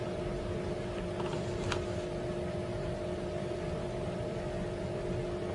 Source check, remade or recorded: recorded